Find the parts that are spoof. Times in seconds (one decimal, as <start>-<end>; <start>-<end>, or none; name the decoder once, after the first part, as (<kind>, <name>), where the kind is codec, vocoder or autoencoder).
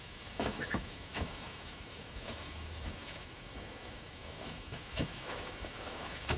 0.0-6.4 (autoencoder, DAC-VAE)